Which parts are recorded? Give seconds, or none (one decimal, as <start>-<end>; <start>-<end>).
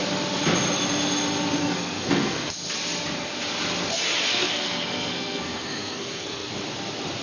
0.0-1.6; 2.5-4.3; 6.6-7.2